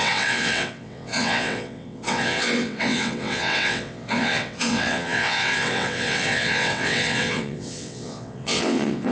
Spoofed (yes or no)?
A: yes